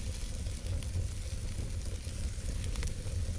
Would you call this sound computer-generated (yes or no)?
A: no